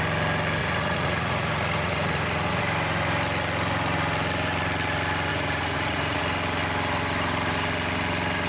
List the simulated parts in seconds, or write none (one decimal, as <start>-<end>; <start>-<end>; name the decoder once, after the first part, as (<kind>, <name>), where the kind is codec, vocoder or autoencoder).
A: 0.6-2.6 (vocoder, Vocos); 5.3-6.2